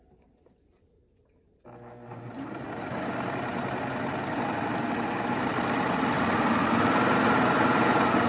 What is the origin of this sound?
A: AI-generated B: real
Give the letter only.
B